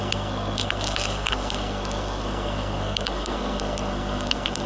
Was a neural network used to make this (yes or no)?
yes